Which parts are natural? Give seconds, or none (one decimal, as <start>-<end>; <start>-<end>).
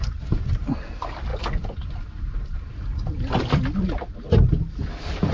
0.0-5.3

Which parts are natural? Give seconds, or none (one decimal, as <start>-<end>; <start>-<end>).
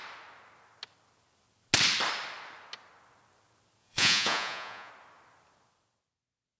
0.0-3.8; 4.9-6.6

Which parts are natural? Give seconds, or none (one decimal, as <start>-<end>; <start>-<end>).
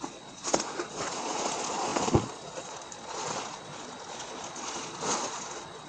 none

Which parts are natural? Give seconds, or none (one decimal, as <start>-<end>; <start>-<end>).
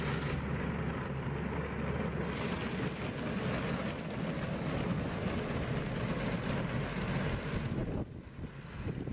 0.0-9.1